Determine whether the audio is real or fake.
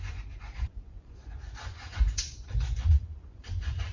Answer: fake